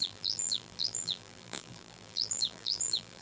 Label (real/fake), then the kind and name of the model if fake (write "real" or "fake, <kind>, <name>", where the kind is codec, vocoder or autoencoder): fake, vocoder, BigVGAN v2